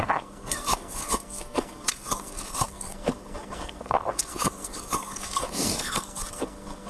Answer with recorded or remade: remade